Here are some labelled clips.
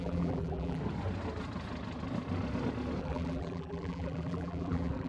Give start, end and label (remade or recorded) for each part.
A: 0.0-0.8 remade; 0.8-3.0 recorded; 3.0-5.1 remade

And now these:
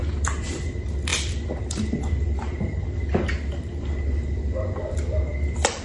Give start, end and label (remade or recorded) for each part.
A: 0.0-5.8 remade

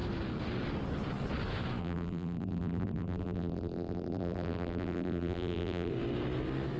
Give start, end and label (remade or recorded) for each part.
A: 0.0-1.8 recorded; 1.8-5.9 remade; 5.9-6.8 recorded

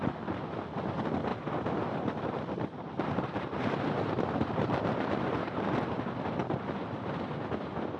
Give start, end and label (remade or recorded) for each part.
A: 0.0-1.3 recorded; 1.3-5.8 remade; 5.8-6.4 recorded; 6.4-7.1 remade; 7.1-8.0 recorded

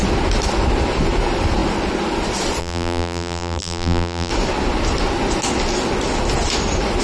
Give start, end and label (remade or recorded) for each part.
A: 0.0-2.6 recorded; 2.6-4.3 remade; 4.3-7.0 recorded